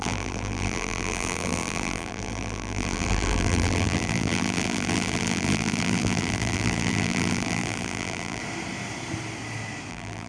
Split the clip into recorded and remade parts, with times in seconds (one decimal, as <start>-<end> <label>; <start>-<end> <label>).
0.0-8.4 remade; 8.4-9.9 recorded; 9.9-10.3 remade